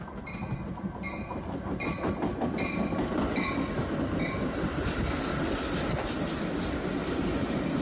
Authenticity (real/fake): real